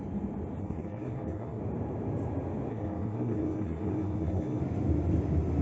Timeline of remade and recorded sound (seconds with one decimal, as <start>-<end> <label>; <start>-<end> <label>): 0.0-0.6 recorded; 0.6-1.6 remade; 1.6-2.7 recorded; 2.7-4.6 remade; 4.6-5.6 recorded